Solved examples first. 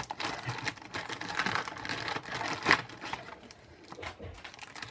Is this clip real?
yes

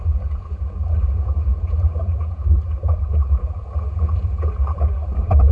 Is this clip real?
no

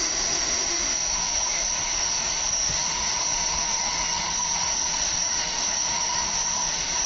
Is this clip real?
no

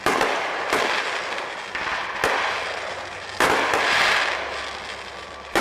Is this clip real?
yes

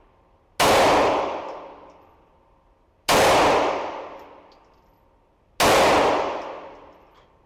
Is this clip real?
yes